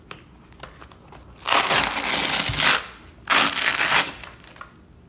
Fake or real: real